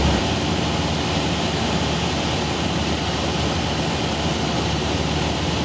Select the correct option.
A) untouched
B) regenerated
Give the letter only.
A